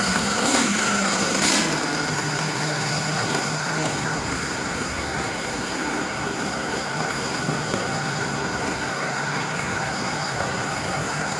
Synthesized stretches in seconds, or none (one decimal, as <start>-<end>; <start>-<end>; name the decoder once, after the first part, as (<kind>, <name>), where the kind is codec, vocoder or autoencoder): 0.0-1.5 (codec, SNAC); 2.1-11.4